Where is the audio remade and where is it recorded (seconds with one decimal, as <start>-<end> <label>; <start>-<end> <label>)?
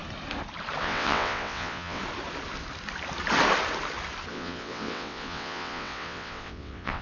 0.0-0.8 recorded; 0.8-2.0 remade; 2.0-4.3 recorded; 4.3-7.0 remade